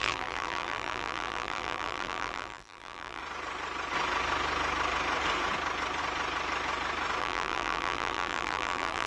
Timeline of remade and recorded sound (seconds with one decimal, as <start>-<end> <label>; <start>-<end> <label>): 0.0-3.2 remade; 3.2-7.2 recorded; 7.2-9.1 remade

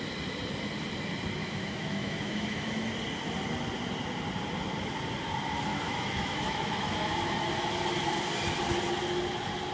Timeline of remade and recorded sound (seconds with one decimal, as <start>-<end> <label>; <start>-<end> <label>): 0.0-1.4 recorded; 1.4-2.9 remade; 2.9-5.7 recorded; 5.7-7.5 remade; 7.5-9.7 recorded

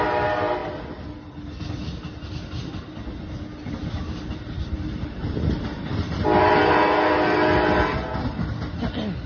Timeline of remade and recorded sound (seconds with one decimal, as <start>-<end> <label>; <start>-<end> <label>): 0.0-5.9 recorded; 5.9-6.6 remade; 6.6-9.3 recorded

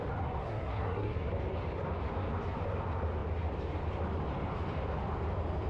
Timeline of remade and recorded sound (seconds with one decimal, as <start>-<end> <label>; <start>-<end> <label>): 0.0-0.4 recorded; 0.4-1.3 remade; 1.3-5.7 recorded

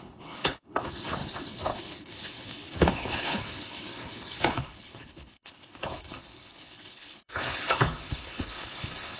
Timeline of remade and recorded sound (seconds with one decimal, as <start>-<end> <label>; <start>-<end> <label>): 0.0-9.2 remade

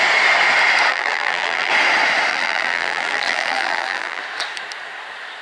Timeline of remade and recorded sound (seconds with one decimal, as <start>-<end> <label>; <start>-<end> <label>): 0.0-0.9 recorded; 0.9-1.7 remade; 1.7-2.3 recorded; 2.3-4.2 remade; 4.2-5.4 recorded

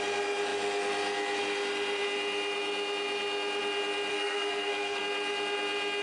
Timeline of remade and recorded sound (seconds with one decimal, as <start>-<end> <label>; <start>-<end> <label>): 0.0-4.1 recorded; 4.1-5.0 remade; 5.0-6.0 recorded

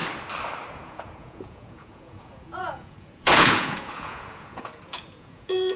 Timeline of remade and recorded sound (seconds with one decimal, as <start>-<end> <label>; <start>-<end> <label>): 0.0-0.7 recorded; 0.7-5.8 remade